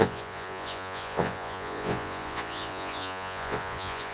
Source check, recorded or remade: remade